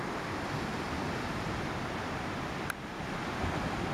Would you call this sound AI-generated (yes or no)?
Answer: yes